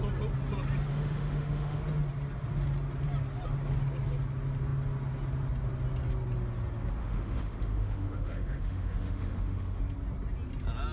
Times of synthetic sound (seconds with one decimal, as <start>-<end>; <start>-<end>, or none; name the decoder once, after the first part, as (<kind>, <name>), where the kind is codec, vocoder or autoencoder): 0.9-1.8 (autoencoder, DAC-VAE); 7.0-9.8